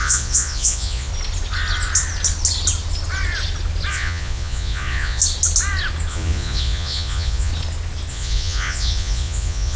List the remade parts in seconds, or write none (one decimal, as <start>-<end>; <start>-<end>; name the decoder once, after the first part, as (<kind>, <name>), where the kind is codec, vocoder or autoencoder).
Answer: 0.0-1.1 (vocoder, Vocos); 3.9-5.2; 6.1-7.5; 8.1-9.8